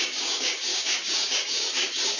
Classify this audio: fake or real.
fake